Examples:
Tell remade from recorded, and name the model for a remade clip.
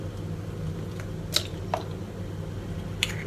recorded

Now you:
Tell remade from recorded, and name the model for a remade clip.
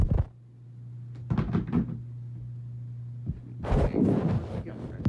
recorded